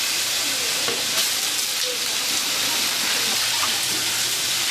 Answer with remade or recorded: recorded